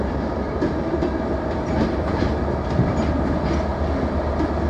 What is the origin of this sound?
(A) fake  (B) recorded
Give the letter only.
B